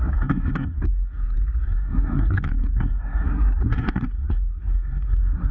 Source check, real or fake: fake